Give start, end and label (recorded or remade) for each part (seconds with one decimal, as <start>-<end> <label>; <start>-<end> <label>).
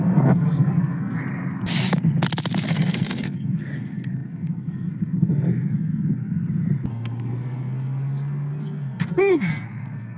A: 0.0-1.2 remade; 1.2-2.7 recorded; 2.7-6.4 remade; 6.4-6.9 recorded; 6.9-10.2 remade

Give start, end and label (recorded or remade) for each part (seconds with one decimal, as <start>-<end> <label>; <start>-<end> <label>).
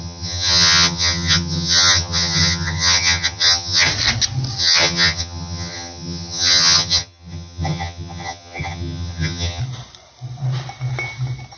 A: 0.0-3.9 remade; 3.9-4.6 recorded; 4.6-9.6 remade; 9.6-11.6 recorded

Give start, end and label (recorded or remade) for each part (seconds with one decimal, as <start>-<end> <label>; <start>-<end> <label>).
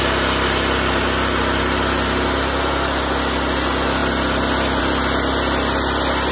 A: 0.0-6.3 recorded